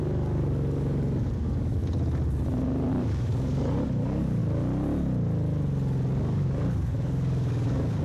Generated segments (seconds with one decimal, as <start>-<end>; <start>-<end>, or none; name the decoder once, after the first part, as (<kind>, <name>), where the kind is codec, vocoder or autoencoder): 0.0-1.8 (codec, DAC); 2.9-4.4; 6.1-8.0